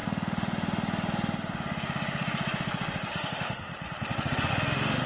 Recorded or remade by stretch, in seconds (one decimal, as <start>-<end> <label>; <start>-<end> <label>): 0.0-3.1 recorded; 3.1-3.7 remade; 3.7-4.5 recorded; 4.5-5.1 remade